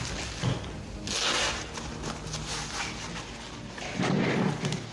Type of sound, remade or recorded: recorded